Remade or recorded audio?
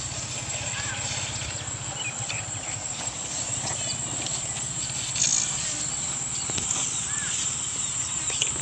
recorded